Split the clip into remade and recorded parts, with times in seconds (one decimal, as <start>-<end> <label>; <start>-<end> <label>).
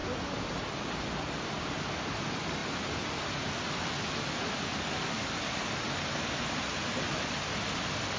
0.0-8.2 recorded